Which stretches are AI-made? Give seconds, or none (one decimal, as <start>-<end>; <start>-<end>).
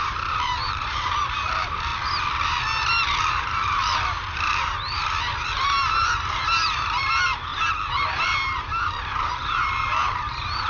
0.0-1.9; 3.2-10.7